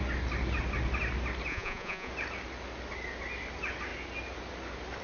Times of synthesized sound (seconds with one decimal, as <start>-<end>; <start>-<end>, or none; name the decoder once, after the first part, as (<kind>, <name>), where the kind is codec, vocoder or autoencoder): 1.5-2.1 (vocoder, Vocos)